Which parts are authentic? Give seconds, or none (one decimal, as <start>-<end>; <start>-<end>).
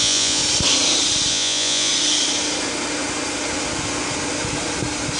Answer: 0.4-1.3; 1.9-5.2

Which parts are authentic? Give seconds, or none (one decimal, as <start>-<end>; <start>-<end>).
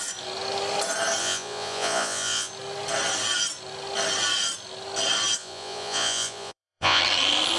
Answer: 0.0-1.2; 2.5-5.4; 7.0-7.6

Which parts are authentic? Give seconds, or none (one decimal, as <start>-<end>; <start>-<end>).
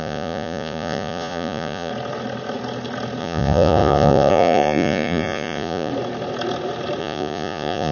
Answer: 1.9-3.2; 5.9-7.0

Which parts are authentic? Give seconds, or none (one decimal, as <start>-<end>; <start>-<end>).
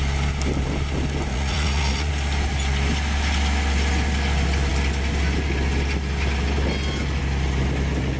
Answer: 0.0-1.3; 2.1-8.2